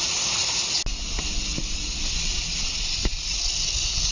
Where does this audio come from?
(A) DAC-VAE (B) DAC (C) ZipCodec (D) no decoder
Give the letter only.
D